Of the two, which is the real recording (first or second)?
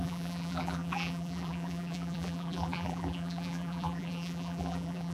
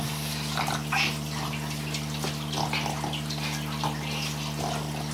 second